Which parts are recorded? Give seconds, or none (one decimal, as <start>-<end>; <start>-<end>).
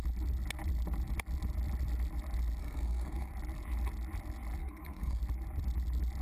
0.0-2.6; 3.3-4.6; 5.2-6.2